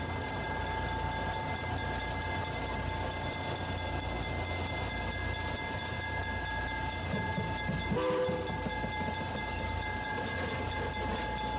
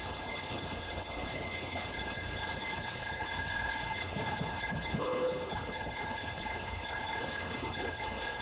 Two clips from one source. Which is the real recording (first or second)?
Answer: first